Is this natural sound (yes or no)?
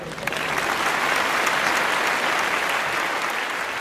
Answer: yes